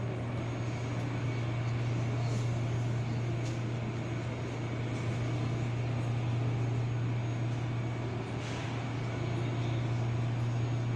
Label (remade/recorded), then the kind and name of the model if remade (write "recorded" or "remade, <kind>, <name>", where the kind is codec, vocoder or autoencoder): recorded